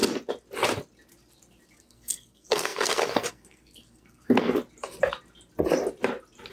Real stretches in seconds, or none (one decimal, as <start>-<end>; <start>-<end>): 0.0-1.8; 4.6-6.5